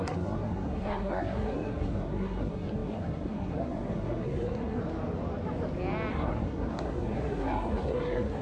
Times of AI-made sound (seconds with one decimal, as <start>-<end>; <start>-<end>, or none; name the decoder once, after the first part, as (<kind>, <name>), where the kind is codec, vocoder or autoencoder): 0.0-4.8 (codec, SNAC); 6.1-8.4

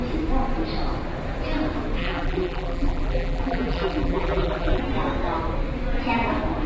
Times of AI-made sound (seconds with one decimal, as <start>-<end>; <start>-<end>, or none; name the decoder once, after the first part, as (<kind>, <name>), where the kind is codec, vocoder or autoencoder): 2.0-4.8 (vocoder, BigVGAN v2)

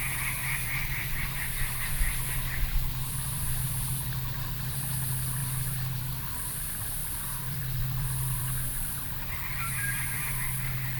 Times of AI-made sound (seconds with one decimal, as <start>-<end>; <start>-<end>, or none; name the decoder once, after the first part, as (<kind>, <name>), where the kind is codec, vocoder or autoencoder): 0.4-4.8 (vocoder, BigVGAN v2); 7.0-10.3

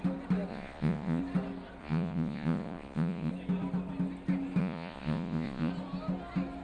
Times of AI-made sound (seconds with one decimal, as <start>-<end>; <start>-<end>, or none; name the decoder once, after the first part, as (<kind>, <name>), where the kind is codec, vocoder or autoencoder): 0.5-1.2 (vocoder, Vocos); 1.8-3.3; 4.6-5.7